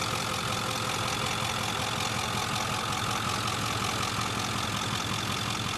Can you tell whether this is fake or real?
real